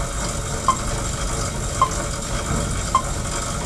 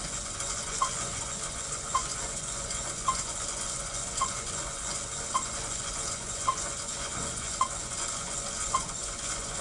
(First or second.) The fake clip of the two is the second